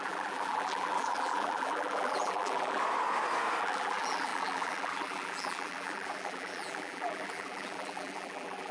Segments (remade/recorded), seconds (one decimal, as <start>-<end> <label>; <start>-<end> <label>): 0.0-2.8 remade; 2.8-3.6 recorded; 3.6-8.7 remade